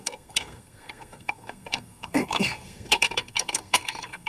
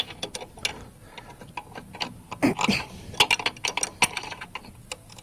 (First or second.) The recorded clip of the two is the second